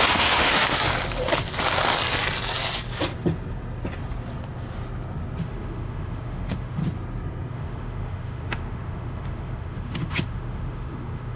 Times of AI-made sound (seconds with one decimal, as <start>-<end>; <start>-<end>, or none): 0.0-0.9; 5.4-6.8; 7.5-11.3

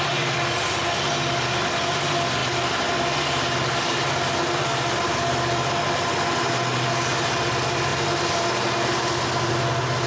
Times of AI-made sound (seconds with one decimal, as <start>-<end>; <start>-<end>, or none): none